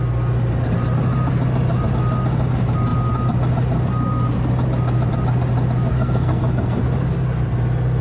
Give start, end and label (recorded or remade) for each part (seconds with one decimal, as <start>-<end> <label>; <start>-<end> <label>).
0.0-5.9 recorded; 5.9-6.8 remade; 6.8-8.0 recorded

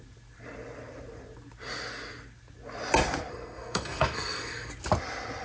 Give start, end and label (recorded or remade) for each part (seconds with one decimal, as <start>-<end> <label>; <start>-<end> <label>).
0.0-3.3 recorded; 3.3-4.7 remade; 4.7-5.4 recorded

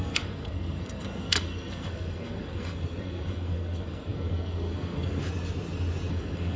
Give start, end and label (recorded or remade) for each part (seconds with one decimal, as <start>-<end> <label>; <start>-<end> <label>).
0.0-5.2 remade; 5.2-6.1 recorded; 6.1-6.6 remade

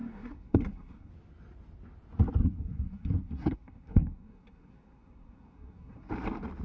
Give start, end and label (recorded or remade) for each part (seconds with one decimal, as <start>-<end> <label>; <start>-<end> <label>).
0.0-1.1 remade; 1.1-2.4 recorded; 2.4-6.1 remade; 6.1-6.6 recorded